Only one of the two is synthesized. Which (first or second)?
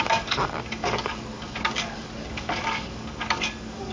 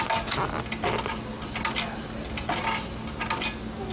first